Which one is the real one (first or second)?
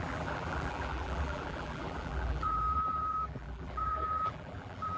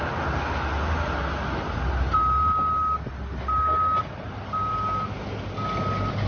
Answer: second